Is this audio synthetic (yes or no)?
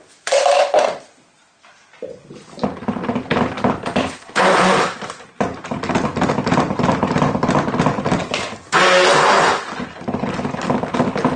no